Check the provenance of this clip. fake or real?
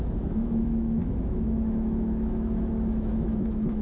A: fake